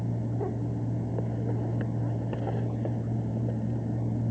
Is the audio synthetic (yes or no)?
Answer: no